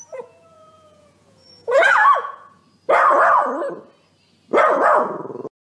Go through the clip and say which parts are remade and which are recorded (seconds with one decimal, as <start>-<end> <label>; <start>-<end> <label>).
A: 0.0-2.6 remade; 2.6-5.7 recorded